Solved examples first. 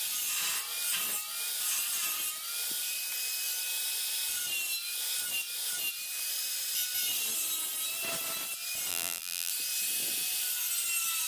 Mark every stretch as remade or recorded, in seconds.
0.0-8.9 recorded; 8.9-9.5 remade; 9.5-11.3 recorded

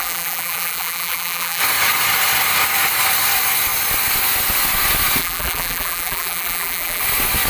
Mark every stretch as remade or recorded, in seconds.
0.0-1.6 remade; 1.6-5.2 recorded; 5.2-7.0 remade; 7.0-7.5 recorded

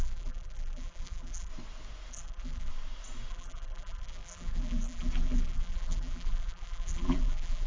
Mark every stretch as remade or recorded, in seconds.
0.0-1.5 remade; 1.5-2.1 recorded; 2.1-2.7 remade; 2.7-3.3 recorded; 3.3-7.7 remade